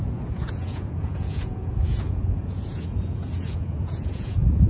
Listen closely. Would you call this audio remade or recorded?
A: remade